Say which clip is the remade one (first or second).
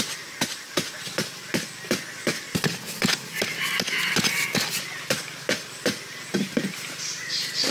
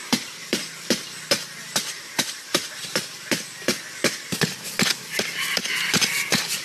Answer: second